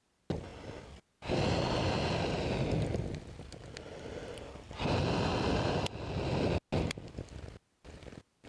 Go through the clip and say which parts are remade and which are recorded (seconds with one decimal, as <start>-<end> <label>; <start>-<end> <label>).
0.0-8.5 recorded